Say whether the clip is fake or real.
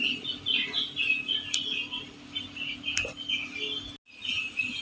real